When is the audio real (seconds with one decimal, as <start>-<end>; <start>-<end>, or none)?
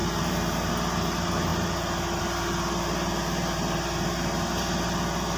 0.7-5.4